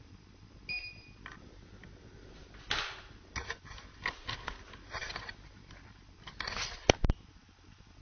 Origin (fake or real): real